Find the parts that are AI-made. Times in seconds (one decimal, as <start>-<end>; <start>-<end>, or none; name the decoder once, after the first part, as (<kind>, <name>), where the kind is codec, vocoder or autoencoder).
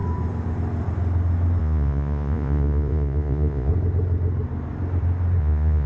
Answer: 1.6-3.7 (vocoder, Vocos); 5.4-5.9